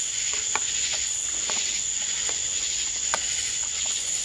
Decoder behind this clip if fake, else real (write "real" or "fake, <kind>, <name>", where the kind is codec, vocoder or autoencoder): fake, vocoder, Vocos